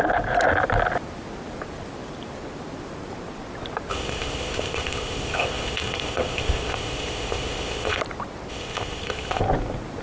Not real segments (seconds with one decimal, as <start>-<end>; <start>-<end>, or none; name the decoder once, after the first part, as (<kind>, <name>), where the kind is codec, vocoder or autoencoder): 3.9-8.0 (codec, ZipCodec); 8.5-9.4